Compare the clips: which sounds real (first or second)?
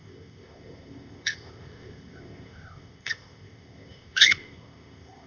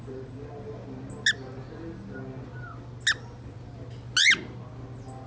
second